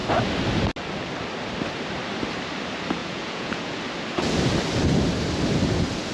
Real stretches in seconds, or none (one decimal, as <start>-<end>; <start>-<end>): 0.0-3.0; 3.8-6.1